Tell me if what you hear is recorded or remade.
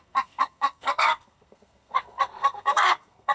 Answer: remade